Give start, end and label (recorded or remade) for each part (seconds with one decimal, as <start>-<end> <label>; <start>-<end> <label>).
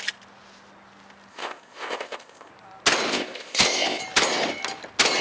0.0-1.3 recorded; 1.3-2.5 remade; 2.5-3.1 recorded; 3.1-4.0 remade; 4.0-5.2 recorded